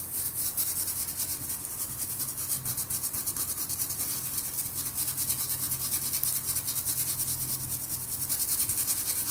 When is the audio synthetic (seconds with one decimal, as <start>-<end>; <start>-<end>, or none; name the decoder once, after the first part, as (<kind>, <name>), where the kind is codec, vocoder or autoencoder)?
1.3-2.2 (vocoder, BigVGAN v2); 3.2-4.0